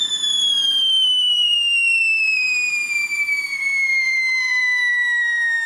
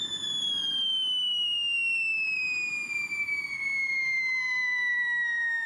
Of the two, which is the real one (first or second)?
second